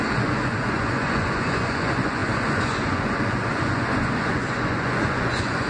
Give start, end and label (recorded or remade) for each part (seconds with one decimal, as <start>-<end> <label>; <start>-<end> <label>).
0.0-5.7 remade